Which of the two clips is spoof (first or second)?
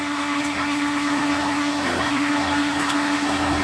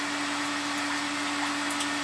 first